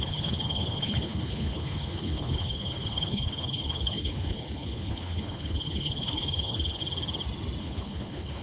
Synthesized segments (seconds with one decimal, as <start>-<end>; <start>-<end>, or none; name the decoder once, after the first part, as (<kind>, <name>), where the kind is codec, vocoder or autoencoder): 0.0-6.8 (codec, HILCodec); 7.6-8.4